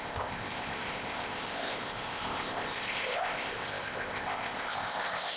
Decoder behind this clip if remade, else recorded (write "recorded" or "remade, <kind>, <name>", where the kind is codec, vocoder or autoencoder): remade, codec, ZipCodec